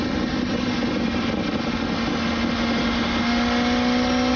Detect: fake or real real